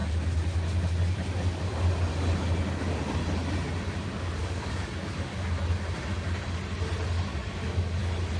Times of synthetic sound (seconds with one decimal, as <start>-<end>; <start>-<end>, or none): 4.4-5.3; 7.3-8.0